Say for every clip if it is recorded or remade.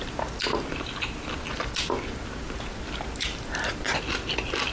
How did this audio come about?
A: recorded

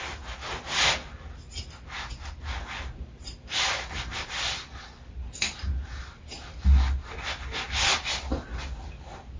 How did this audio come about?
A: recorded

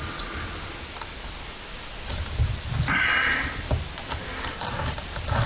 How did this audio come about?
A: recorded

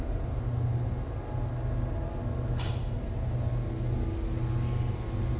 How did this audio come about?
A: recorded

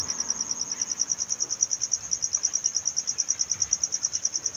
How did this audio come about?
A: recorded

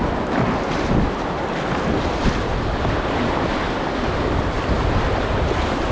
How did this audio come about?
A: recorded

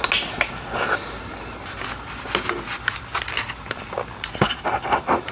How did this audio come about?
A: recorded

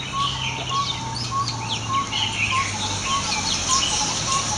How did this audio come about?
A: recorded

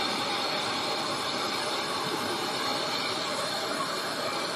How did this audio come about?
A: recorded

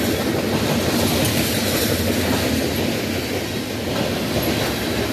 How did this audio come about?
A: recorded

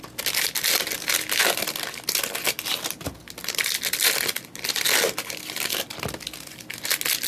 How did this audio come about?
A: recorded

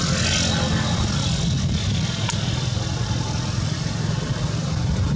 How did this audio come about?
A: recorded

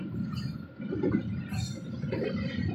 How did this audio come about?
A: recorded